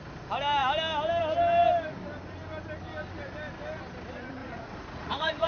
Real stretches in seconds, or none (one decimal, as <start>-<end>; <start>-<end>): 0.0-4.4